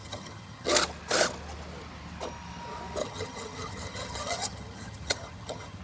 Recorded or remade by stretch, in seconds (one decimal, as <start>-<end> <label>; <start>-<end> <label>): 0.0-0.7 remade; 0.7-3.0 recorded; 3.0-5.8 remade